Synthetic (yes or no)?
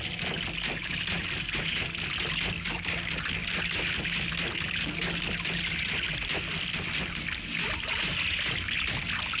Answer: no